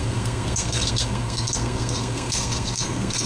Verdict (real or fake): fake